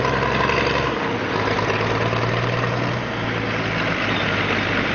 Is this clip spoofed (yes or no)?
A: no